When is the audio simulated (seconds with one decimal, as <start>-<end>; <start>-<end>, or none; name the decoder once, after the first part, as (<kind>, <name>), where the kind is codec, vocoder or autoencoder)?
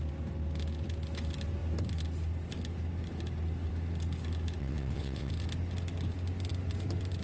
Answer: 4.6-5.3 (vocoder, WaveNeXt)